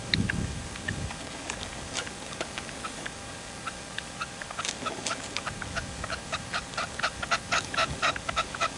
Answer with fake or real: fake